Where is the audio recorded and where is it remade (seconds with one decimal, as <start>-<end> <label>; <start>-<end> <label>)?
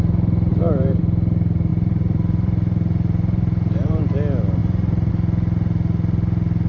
0.0-0.5 recorded; 0.5-1.0 remade; 1.0-1.7 recorded; 1.7-4.0 remade; 4.0-4.6 recorded; 4.6-5.1 remade; 5.1-6.7 recorded